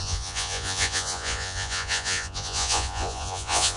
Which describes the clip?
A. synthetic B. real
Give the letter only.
A